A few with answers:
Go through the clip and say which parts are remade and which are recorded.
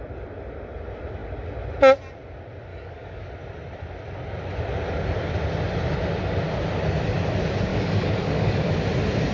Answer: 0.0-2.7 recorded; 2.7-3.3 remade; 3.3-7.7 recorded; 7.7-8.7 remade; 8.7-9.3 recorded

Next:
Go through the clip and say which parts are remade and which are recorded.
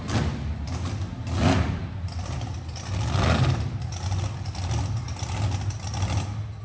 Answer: 0.0-6.6 recorded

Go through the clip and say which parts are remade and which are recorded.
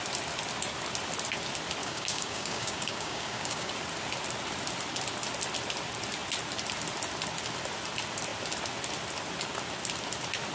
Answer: 0.0-1.8 recorded; 1.8-3.7 remade; 3.7-10.5 recorded